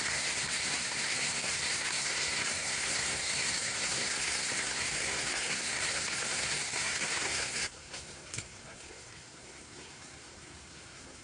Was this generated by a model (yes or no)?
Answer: yes